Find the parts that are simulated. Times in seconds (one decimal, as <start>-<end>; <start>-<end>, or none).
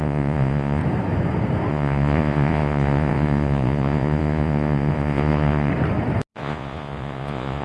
0.0-0.8; 1.7-5.7; 6.3-7.6